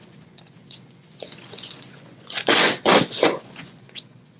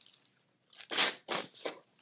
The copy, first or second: first